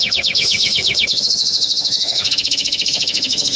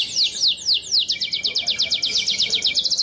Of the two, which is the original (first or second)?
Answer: second